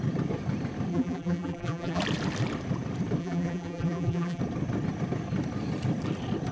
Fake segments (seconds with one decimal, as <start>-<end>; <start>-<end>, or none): 0.9-2.0; 3.2-4.4